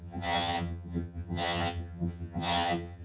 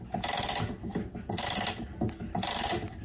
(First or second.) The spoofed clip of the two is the first